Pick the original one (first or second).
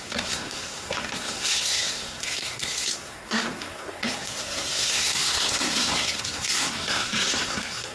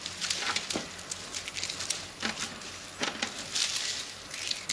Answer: second